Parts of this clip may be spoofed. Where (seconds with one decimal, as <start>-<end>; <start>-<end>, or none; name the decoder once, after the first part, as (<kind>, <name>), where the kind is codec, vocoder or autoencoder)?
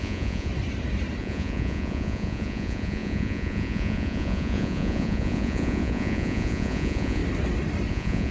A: 0.0-0.5 (vocoder, Vocos); 1.2-7.2; 7.9-8.3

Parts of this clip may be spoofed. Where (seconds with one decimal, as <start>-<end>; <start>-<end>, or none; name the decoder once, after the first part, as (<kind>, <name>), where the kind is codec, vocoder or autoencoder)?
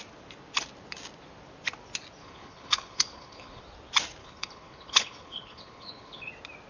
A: 2.2-3.6 (codec, HILCodec); 4.2-6.3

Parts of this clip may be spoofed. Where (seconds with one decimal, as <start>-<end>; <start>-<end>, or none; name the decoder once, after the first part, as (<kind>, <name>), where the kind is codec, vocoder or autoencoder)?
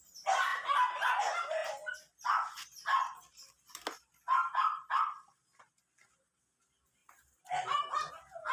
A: 0.5-1.2 (vocoder, BigVGAN v2); 7.0-8.1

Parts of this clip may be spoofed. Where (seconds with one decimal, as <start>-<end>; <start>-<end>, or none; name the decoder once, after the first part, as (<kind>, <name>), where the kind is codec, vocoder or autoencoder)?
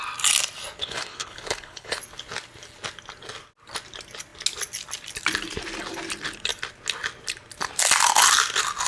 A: 0.8-2.0 (codec, HILCodec)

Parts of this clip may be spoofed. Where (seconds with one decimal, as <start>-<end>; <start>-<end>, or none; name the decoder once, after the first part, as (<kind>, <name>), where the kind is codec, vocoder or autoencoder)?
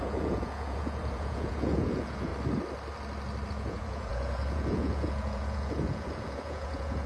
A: 0.0-2.3 (vocoder, Vocos); 3.5-7.1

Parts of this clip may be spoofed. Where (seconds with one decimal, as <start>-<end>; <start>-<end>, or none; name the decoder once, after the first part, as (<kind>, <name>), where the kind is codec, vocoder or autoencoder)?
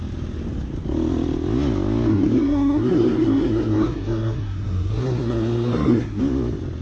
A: 2.1-6.2 (codec, SNAC)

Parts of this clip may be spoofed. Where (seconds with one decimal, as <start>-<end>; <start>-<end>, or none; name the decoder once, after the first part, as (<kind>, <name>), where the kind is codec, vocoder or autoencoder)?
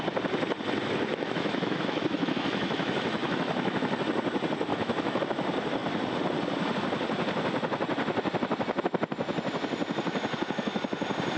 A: 1.1-4.0 (autoencoder, DAC-VAE); 4.7-5.2